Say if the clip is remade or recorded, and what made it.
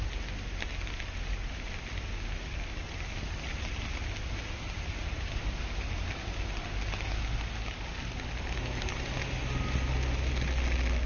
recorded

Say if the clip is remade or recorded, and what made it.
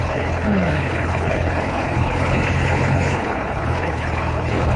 remade, codec, HILCodec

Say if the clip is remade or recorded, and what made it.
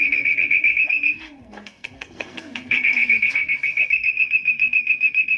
remade, codec, SNAC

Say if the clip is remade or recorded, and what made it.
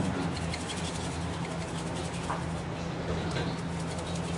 recorded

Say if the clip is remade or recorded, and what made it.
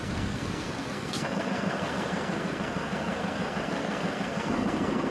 remade, codec, SNAC